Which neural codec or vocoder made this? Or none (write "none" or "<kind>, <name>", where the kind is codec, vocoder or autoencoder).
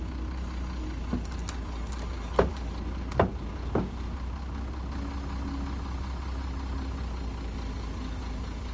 none